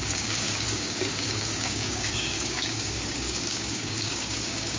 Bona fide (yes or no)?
no